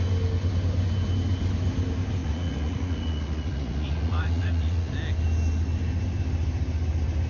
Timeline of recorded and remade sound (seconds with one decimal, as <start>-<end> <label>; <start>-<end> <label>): 0.0-2.2 recorded; 2.2-4.9 remade; 4.9-7.3 recorded